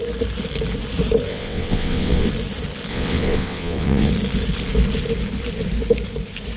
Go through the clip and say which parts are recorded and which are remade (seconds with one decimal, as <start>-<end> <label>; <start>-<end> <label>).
0.0-1.3 recorded; 1.3-2.3 remade; 2.3-2.9 recorded; 2.9-4.1 remade; 4.1-6.6 recorded